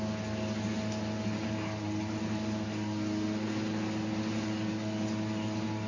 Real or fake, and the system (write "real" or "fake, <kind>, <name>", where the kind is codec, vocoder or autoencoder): real